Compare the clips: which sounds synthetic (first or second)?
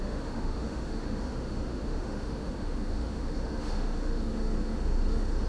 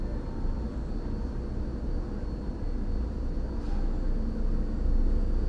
first